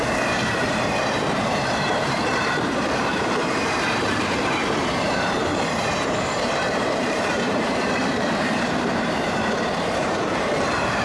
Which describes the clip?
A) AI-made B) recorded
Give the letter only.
A